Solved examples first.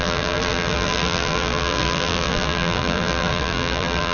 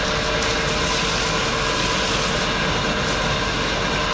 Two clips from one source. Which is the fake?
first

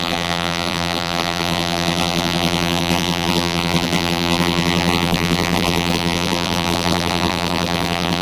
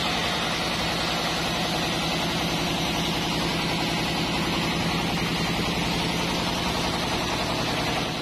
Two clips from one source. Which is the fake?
first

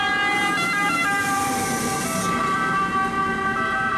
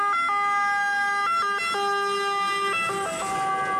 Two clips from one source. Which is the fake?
first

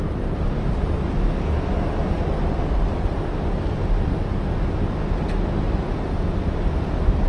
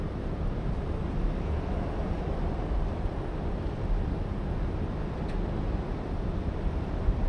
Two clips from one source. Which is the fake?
second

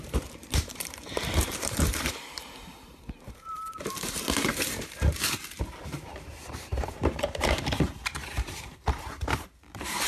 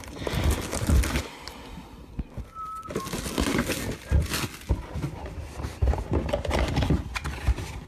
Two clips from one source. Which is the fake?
first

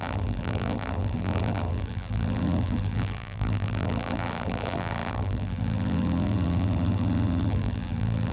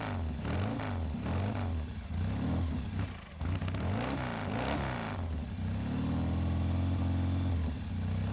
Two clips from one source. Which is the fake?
first